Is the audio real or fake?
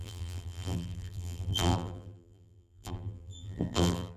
fake